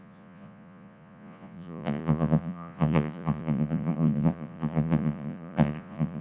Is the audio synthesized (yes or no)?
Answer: yes